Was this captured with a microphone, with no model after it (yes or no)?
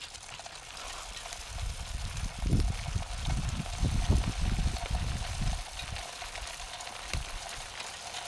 yes